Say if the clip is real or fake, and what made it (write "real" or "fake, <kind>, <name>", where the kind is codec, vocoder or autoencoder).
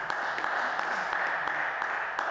real